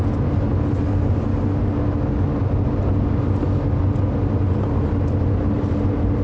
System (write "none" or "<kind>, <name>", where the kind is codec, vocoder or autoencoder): none